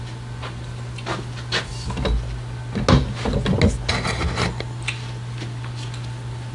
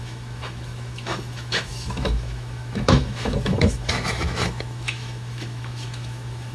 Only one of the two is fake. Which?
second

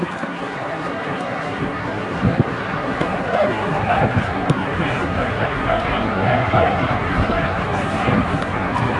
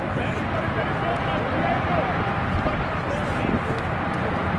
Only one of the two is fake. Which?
first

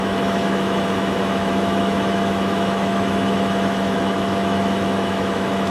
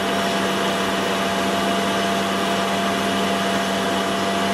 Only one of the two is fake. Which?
first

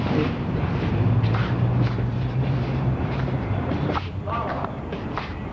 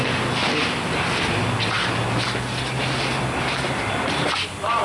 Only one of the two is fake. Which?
first